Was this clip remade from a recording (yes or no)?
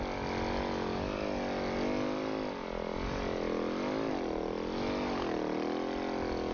no